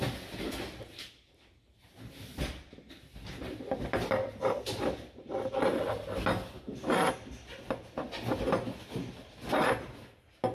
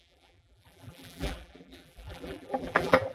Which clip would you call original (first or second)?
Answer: first